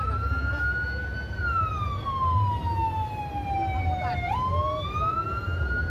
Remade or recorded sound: recorded